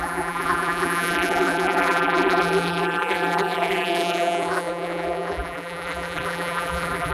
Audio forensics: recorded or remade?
remade